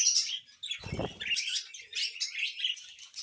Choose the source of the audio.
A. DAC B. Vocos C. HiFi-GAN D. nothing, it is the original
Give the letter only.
D